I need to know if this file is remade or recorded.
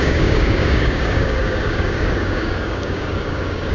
remade